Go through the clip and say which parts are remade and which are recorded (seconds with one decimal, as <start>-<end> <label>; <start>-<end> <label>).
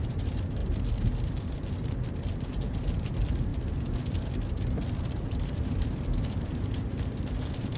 0.0-3.5 remade; 3.5-5.0 recorded; 5.0-7.8 remade